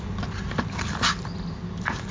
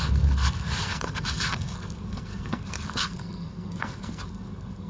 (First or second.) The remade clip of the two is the second